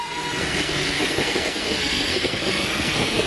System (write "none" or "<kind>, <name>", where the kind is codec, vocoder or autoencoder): codec, SNAC